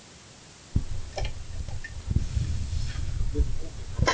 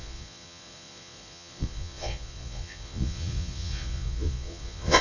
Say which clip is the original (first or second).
first